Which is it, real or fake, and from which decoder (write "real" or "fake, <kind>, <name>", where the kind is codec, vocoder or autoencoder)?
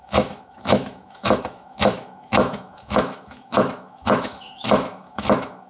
fake, autoencoder, DAC-VAE